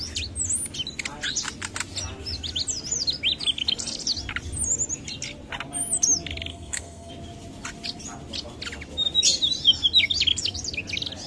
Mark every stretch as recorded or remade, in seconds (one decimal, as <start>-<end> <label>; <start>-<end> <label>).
0.0-6.5 recorded; 6.5-7.1 remade; 7.1-11.3 recorded